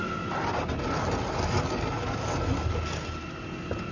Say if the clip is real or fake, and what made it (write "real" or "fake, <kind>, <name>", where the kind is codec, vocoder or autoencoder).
real